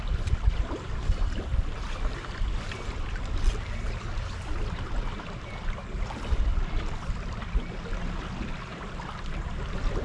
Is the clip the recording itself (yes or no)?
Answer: yes